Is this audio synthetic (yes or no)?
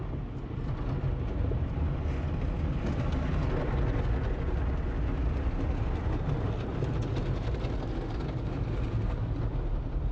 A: no